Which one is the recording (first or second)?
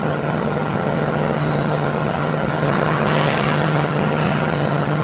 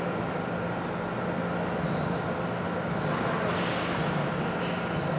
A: second